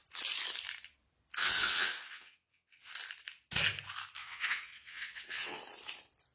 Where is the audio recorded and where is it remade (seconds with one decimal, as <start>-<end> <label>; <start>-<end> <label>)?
0.0-1.4 recorded; 1.4-2.9 remade; 2.9-4.2 recorded; 4.2-5.6 remade; 5.6-6.3 recorded